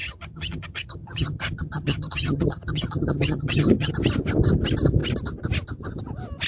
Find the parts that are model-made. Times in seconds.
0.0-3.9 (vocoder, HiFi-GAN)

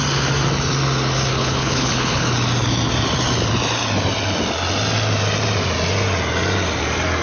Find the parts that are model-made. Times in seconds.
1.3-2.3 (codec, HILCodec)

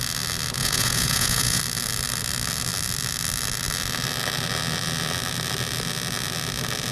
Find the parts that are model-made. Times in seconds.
0.6-1.6 (vocoder, Vocos)

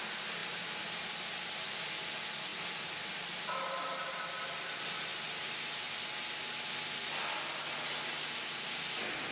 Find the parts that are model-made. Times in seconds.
2.5-4.2 (vocoder, BigVGAN v2)